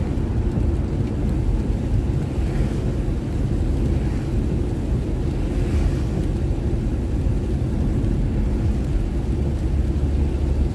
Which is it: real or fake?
real